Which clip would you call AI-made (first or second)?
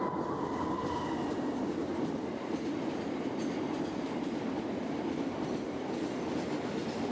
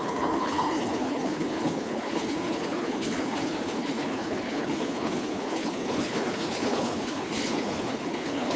second